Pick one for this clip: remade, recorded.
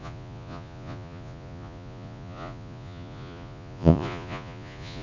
remade